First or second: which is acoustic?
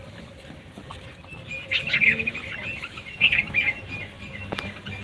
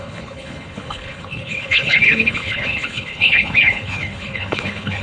first